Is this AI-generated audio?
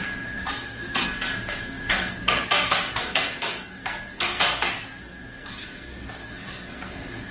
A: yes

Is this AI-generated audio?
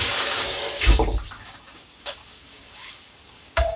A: yes